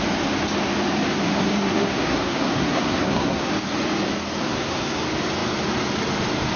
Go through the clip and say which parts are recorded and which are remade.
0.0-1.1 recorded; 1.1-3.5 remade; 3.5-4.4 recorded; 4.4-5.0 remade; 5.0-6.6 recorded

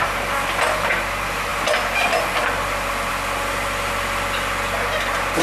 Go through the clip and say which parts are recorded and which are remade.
0.0-5.4 recorded

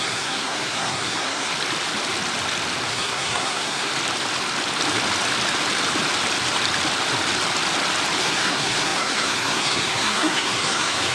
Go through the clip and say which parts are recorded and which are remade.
0.0-1.5 remade; 1.5-2.9 recorded; 2.9-3.9 remade; 3.9-8.2 recorded; 8.2-11.1 remade

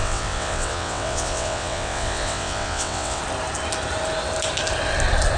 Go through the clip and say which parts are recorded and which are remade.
0.0-3.2 remade; 3.2-5.4 recorded

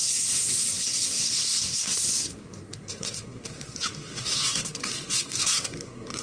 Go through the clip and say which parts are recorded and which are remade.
0.0-6.2 remade

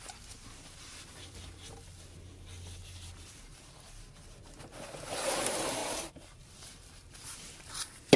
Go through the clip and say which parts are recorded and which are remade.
0.0-5.8 recorded; 5.8-7.7 remade; 7.7-8.2 recorded

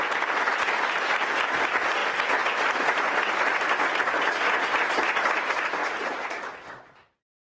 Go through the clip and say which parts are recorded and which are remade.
0.0-7.5 recorded

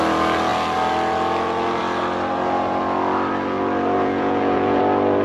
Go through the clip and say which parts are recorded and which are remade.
0.0-4.0 recorded; 4.0-4.8 remade; 4.8-5.2 recorded